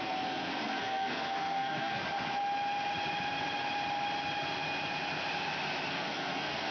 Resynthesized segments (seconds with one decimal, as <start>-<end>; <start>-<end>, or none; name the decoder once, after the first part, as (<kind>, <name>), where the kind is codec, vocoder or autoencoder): 0.0-2.0 (codec, SNAC); 5.9-6.7